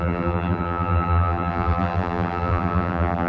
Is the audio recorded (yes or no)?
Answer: no